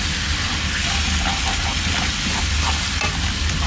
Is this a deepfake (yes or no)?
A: yes